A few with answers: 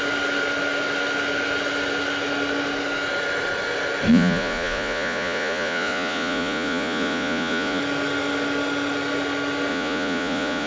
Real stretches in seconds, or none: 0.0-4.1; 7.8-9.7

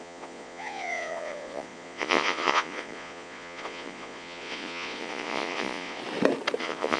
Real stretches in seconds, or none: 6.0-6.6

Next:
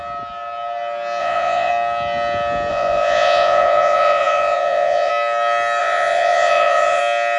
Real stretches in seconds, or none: 0.0-1.2; 1.7-2.7; 5.1-5.8; 7.0-7.4